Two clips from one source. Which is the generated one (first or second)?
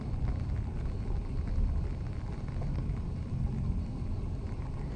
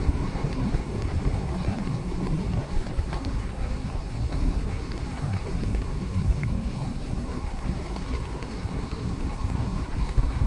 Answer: second